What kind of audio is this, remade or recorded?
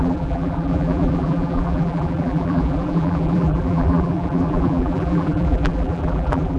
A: remade